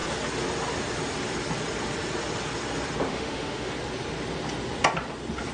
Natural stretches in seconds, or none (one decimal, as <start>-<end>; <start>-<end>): 0.0-3.1; 3.7-5.5